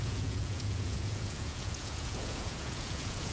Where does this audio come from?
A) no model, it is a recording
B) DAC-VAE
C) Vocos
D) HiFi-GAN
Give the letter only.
C